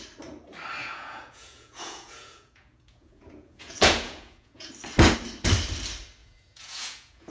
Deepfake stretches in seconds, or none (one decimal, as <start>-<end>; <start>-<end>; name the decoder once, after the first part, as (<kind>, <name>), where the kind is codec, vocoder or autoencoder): 0.8-4.7 (vocoder, Vocos); 6.2-7.3